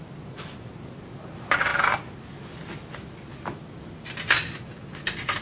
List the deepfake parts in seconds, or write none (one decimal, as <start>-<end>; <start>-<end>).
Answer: none